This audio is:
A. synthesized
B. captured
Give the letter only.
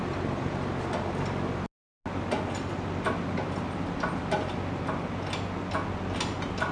B